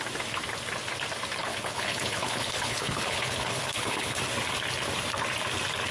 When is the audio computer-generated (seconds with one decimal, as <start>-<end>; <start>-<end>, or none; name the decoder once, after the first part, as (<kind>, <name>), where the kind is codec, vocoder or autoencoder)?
1.4-4.2 (codec, HILCodec)